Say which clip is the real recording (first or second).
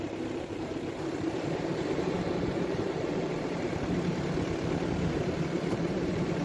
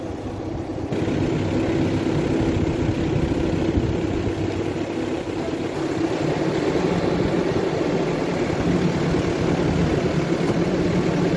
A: second